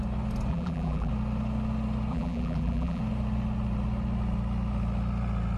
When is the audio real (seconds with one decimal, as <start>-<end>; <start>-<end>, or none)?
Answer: 0.0-0.5; 1.1-2.1; 3.0-5.6